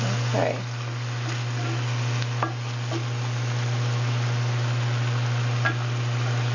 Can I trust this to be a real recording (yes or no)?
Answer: yes